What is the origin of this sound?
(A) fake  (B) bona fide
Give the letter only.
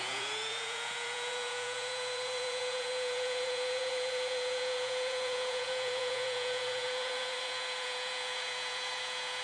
A